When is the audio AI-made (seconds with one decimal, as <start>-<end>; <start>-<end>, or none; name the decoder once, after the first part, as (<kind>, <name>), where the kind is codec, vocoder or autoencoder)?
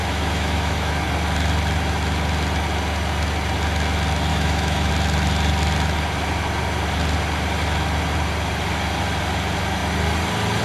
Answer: 0.0-0.9 (autoencoder, DAC-VAE); 4.3-4.9